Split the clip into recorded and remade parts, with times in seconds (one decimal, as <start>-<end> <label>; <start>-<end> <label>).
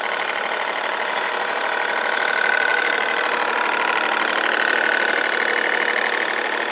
0.0-2.7 recorded; 2.7-3.2 remade; 3.2-6.7 recorded